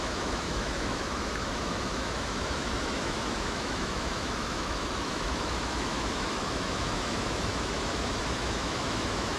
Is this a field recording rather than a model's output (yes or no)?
no